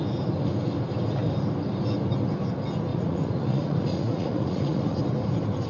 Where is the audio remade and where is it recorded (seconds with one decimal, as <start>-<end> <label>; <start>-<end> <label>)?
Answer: 0.0-2.9 recorded; 2.9-5.0 remade; 5.0-5.7 recorded